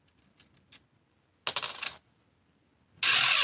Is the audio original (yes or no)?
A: yes